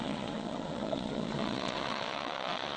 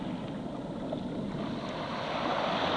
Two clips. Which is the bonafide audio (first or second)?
second